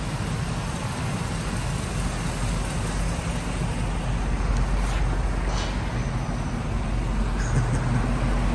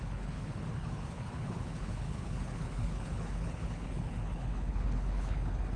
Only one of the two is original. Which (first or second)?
first